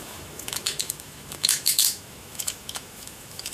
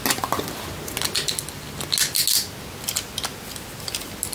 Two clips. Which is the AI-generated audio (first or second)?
first